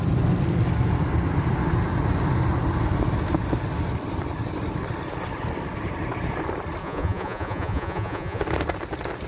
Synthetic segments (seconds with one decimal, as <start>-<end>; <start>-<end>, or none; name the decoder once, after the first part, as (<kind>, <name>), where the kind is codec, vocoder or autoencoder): 6.8-8.4 (vocoder, Vocos)